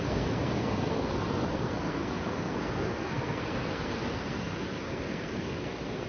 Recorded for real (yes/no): no